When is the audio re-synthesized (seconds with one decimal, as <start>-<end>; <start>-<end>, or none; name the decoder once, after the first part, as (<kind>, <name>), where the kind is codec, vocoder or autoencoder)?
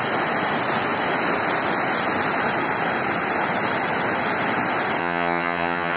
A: 5.0-6.0 (vocoder, HiFi-GAN)